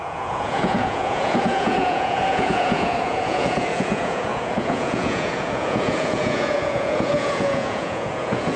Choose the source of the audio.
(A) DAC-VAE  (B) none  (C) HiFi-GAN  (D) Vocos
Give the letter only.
D